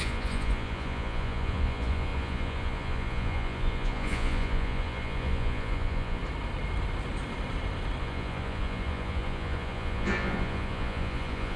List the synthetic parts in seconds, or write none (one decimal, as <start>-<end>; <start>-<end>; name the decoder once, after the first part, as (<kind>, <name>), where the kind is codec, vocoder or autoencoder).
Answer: 0.0-6.2 (vocoder, Vocos); 8.0-11.6